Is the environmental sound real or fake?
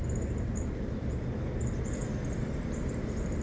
real